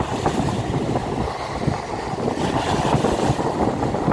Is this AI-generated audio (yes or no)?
no